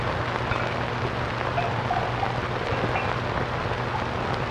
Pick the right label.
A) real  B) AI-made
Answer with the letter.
A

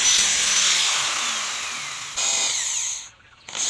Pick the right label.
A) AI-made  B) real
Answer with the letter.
B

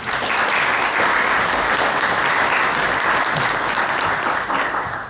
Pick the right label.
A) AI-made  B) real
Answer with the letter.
B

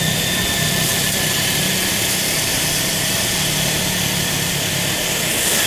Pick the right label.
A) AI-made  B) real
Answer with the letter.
A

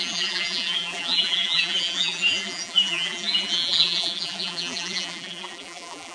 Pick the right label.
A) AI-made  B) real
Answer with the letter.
A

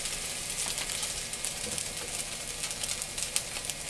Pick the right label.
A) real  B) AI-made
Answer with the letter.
A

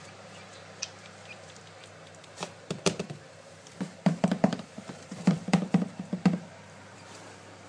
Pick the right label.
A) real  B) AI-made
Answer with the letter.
B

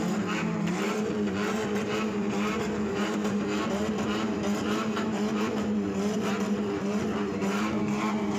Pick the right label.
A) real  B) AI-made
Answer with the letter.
B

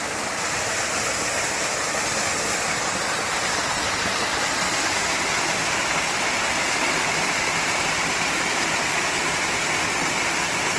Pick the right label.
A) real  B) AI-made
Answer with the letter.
A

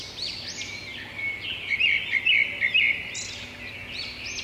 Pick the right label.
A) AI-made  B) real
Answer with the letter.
B